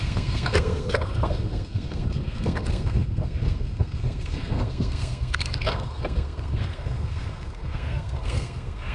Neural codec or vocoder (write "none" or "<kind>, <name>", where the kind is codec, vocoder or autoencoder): codec, SNAC